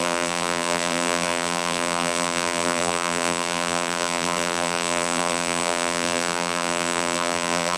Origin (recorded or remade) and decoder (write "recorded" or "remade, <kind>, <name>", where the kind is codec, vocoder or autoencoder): remade, vocoder, BigVGAN v2